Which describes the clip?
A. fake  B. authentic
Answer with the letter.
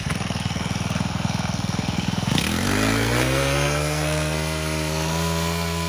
A